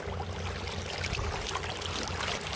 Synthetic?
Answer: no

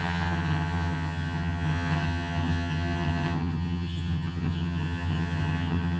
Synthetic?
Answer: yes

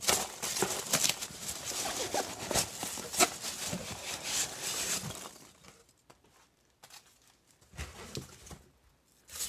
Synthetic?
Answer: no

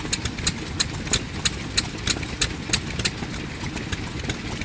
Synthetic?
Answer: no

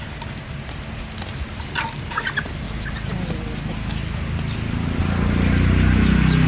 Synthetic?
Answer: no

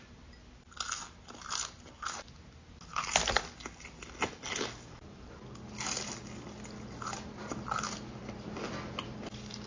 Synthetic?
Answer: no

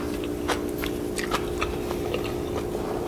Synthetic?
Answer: no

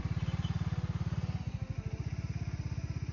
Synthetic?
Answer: no